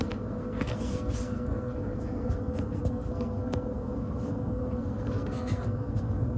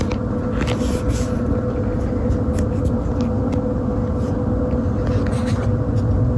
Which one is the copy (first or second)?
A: first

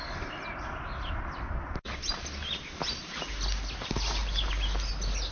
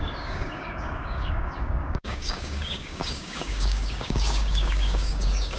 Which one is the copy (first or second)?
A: second